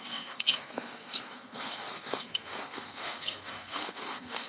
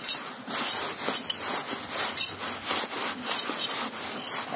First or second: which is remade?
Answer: first